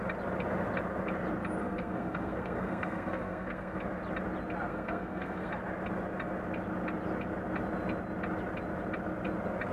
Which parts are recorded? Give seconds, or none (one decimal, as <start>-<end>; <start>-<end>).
0.0-1.6; 3.8-4.7; 5.5-9.7